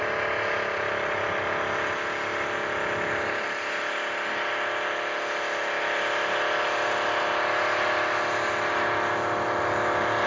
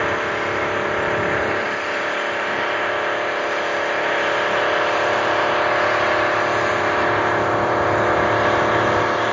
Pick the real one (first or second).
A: first